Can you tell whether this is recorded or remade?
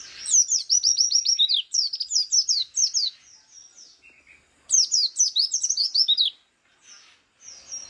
recorded